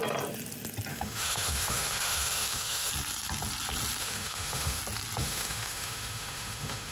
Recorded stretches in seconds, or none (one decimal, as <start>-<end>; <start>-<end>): 0.0-0.9; 2.9-4.0; 4.8-5.2